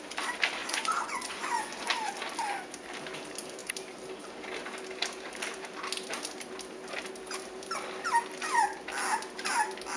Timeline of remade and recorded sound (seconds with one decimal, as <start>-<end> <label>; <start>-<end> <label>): 0.0-0.6 recorded; 0.6-1.9 remade; 1.9-10.0 recorded